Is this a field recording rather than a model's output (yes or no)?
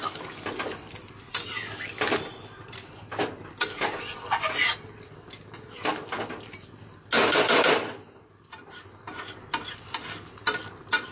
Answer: yes